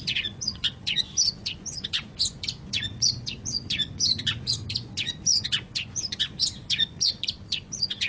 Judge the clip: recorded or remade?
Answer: remade